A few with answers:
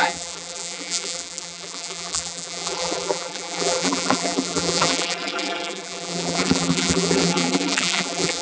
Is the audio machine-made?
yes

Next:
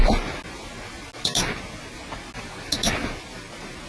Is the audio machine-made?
no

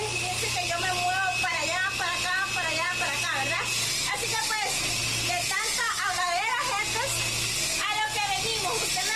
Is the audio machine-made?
no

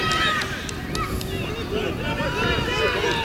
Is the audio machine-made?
no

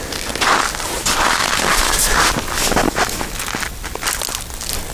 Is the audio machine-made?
no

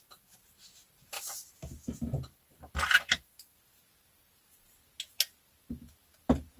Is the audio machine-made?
no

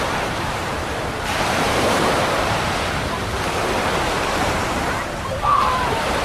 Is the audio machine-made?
yes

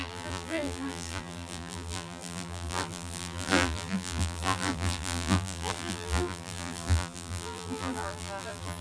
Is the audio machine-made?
yes